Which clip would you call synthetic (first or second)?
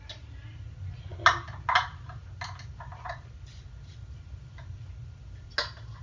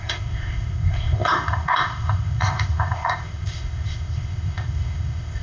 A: second